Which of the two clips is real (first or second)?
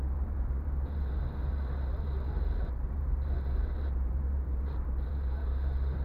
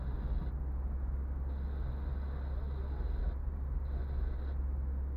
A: second